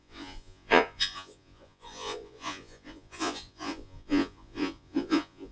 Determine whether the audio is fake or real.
fake